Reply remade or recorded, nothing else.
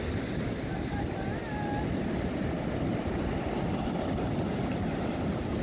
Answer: recorded